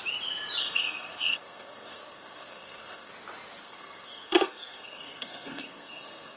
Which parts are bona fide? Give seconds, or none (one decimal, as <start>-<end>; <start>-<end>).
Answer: 0.0-0.6; 3.1-3.6

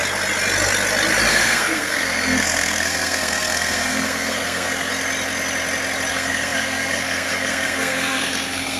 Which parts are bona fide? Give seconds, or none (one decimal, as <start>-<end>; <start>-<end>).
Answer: 0.0-1.3; 4.9-6.1

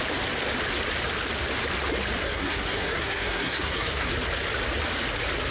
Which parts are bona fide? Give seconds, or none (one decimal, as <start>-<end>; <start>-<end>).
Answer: 0.0-2.2; 4.1-5.5